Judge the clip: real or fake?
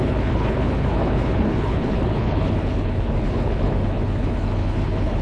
fake